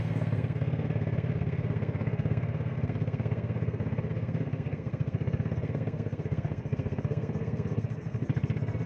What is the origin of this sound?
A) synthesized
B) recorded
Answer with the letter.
A